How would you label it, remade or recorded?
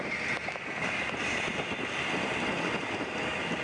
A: remade